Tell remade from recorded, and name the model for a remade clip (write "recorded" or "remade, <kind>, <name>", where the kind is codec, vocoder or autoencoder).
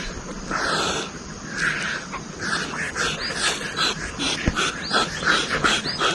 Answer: recorded